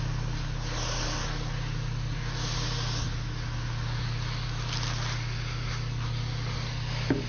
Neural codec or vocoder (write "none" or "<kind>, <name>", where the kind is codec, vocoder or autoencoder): none